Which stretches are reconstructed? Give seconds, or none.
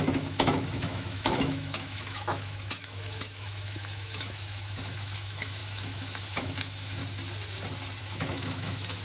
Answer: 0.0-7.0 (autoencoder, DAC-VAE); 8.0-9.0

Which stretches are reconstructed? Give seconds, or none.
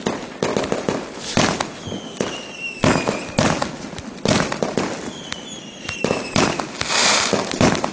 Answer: 0.0-0.5 (vocoder, BigVGAN v2); 4.6-5.6; 6.9-7.9